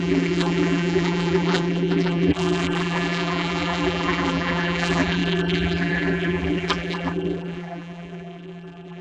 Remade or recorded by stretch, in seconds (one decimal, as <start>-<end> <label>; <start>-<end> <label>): 0.0-9.0 remade